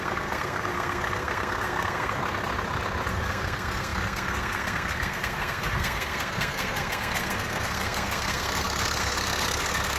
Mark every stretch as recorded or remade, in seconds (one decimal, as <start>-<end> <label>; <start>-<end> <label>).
0.0-2.2 remade; 2.2-3.1 recorded; 3.1-10.0 remade